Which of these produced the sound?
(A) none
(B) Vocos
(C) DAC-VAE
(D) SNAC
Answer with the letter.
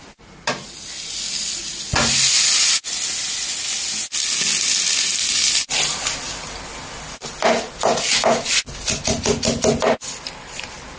A